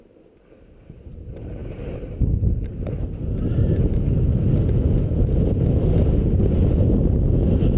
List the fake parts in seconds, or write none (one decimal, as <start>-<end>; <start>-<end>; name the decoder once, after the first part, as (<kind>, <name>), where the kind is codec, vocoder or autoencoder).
none